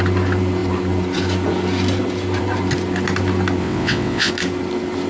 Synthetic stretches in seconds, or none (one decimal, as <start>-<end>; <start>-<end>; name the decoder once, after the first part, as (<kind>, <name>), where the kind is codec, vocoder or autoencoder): 3.6-4.3 (vocoder, WaveNeXt)